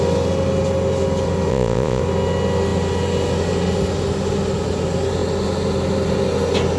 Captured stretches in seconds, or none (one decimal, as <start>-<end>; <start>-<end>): 0.0-1.5; 2.0-6.8